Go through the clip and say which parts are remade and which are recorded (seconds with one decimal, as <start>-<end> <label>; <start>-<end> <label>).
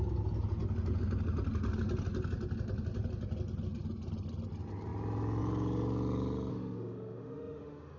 0.0-6.5 recorded; 6.5-8.0 remade